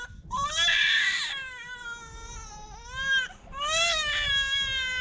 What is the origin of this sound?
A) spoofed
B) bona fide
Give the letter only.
B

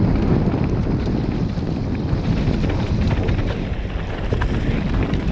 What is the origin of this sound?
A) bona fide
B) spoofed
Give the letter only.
A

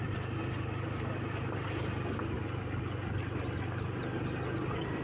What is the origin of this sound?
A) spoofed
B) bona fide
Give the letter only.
B